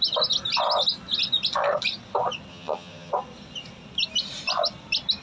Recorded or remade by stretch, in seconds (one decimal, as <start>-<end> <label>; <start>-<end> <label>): 0.0-2.5 recorded; 2.5-3.1 remade; 3.1-5.2 recorded